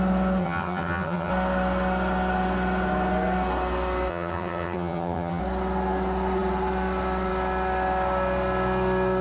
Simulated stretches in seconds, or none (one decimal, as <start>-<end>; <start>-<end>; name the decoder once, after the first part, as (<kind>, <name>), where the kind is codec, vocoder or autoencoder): 0.4-1.3 (vocoder, HiFi-GAN); 4.1-5.4